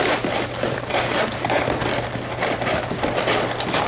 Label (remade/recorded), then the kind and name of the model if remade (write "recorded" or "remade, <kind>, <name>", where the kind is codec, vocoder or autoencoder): remade, vocoder, BigVGAN v2